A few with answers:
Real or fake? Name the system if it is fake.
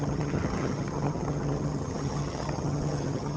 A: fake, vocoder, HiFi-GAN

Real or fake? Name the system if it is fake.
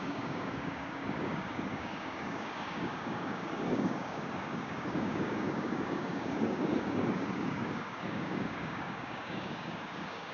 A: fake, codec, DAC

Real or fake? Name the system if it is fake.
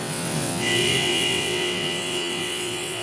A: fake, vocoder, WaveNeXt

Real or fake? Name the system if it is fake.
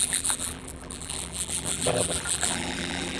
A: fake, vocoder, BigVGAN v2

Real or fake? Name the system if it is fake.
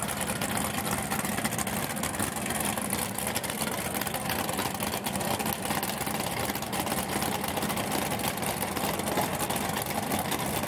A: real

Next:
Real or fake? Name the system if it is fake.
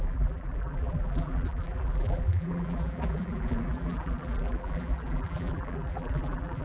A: fake, vocoder, BigVGAN v2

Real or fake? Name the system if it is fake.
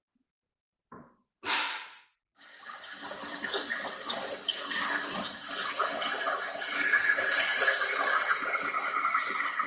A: real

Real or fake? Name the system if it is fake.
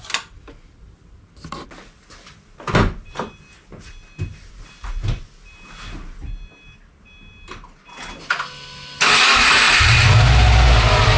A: real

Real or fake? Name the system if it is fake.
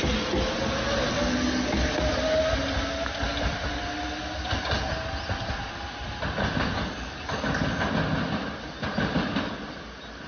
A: real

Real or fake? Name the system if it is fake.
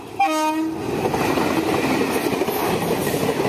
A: real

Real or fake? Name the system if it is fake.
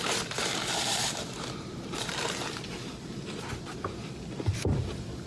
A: fake, vocoder, BigVGAN v2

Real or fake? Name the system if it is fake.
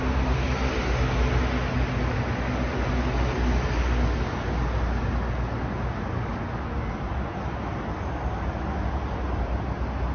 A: real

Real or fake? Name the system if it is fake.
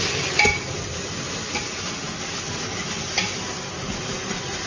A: real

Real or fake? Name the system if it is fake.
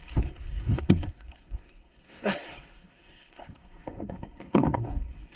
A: fake, codec, SNAC